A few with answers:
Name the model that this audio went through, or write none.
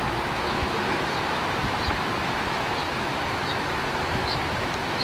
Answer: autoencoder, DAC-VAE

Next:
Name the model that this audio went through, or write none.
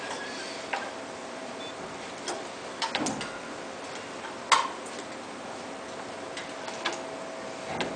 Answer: none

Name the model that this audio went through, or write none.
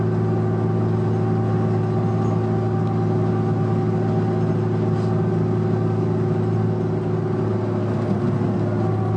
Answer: none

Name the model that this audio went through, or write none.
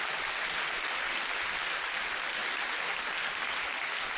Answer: none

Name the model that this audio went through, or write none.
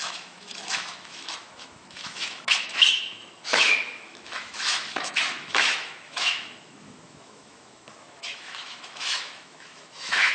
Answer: autoencoder, DAC-VAE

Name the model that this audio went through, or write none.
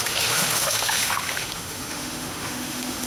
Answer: autoencoder, DAC-VAE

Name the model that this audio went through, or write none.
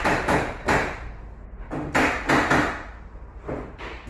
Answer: none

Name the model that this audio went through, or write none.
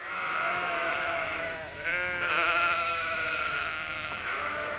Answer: autoencoder, DAC-VAE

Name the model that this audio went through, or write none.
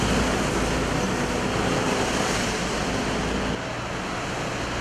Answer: none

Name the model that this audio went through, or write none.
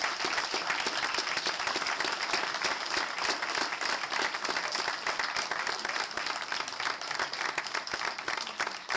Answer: none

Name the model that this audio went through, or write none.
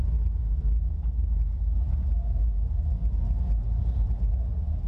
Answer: none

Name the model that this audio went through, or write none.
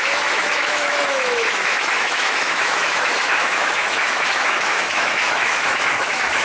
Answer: autoencoder, DAC-VAE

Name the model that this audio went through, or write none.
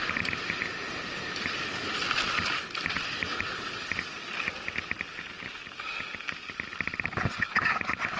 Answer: none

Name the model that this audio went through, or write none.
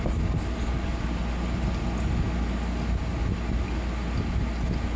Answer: none